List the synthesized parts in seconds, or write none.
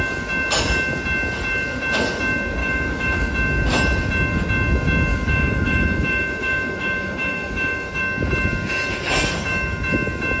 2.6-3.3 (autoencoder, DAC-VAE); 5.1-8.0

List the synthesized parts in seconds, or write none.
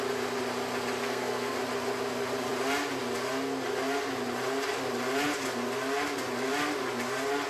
1.0-1.6 (codec, SNAC)